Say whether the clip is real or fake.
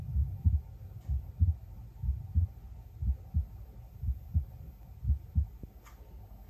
real